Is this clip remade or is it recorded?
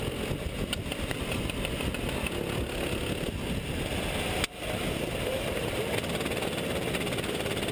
recorded